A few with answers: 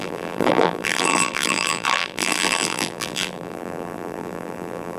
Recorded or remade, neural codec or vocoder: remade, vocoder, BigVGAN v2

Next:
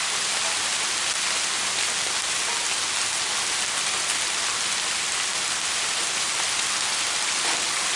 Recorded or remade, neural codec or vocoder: recorded